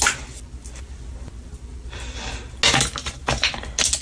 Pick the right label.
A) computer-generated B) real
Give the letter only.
B